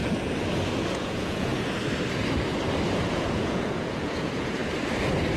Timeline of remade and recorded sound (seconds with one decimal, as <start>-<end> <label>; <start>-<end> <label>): 0.0-0.9 recorded; 0.9-1.5 remade; 1.5-3.1 recorded; 3.1-4.6 remade; 4.6-5.4 recorded